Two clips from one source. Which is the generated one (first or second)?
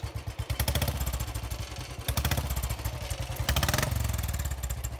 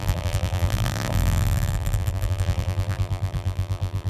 second